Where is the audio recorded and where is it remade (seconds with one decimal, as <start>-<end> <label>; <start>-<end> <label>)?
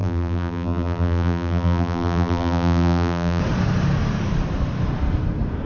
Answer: 0.0-3.4 remade; 3.4-5.7 recorded